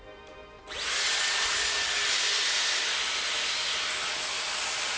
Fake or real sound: real